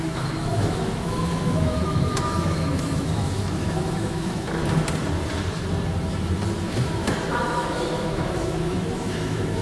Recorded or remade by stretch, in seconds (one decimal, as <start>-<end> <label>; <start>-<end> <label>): 0.0-4.6 remade; 4.6-6.6 recorded; 6.6-9.6 remade